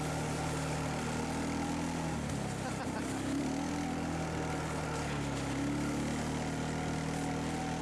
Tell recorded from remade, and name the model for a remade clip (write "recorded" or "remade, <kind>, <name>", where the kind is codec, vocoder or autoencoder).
recorded